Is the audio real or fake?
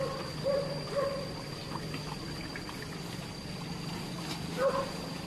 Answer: real